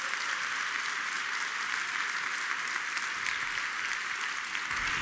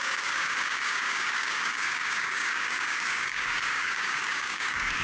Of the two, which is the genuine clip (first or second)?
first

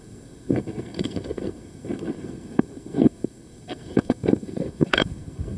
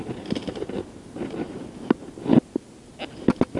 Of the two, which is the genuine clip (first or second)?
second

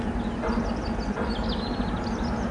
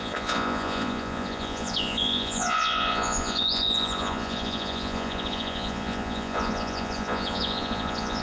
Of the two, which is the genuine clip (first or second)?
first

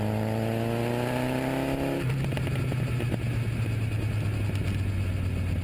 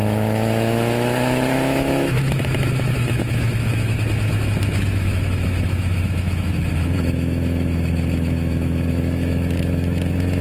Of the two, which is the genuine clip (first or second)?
first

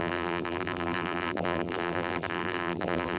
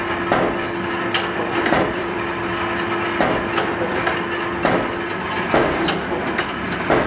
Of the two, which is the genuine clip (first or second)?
second